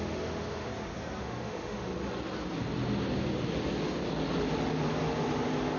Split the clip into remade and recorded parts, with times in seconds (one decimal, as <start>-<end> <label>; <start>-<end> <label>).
0.0-0.7 remade; 0.7-1.2 recorded; 1.2-1.9 remade; 1.9-5.8 recorded